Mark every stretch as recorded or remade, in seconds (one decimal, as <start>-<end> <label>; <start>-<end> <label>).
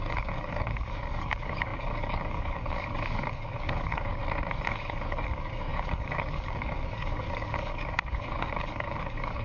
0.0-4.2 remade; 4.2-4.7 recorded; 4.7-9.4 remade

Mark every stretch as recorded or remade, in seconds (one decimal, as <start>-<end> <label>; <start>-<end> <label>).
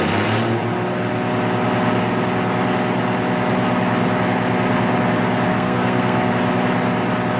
0.0-5.5 recorded; 5.5-6.3 remade; 6.3-7.4 recorded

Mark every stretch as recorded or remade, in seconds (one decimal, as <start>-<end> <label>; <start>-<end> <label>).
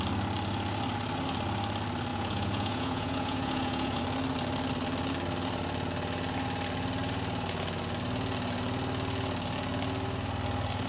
0.0-2.1 recorded; 2.1-4.0 remade; 4.0-10.9 recorded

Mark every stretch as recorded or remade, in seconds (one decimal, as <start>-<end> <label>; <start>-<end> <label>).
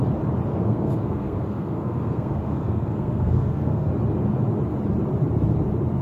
0.0-0.5 recorded; 0.5-3.9 remade; 3.9-6.0 recorded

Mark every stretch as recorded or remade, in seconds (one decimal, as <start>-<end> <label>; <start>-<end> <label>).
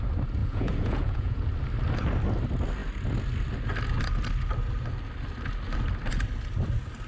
0.0-0.4 recorded; 0.4-1.5 remade; 1.5-7.1 recorded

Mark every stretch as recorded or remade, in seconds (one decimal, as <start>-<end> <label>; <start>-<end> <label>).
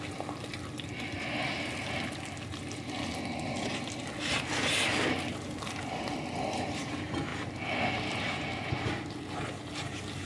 0.0-10.3 recorded